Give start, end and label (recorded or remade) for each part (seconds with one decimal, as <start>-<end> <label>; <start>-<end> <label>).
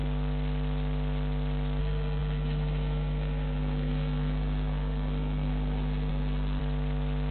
0.0-1.8 recorded; 1.8-6.6 remade; 6.6-7.3 recorded